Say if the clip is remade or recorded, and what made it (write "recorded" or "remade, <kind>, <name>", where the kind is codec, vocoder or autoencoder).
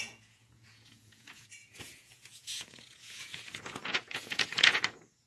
remade, vocoder, Vocos